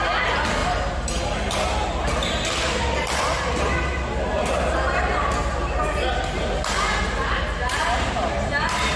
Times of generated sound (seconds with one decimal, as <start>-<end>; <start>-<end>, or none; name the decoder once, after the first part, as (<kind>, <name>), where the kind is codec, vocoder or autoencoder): 0.6-1.2 (vocoder, BigVGAN v2)